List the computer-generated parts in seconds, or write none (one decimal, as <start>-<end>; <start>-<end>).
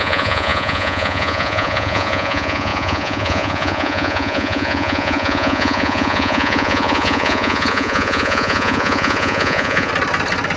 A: 0.0-9.9